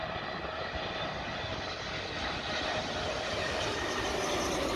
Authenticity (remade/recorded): recorded